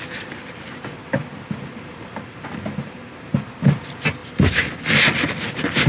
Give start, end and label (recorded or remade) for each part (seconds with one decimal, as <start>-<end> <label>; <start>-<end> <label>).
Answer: 0.0-5.9 recorded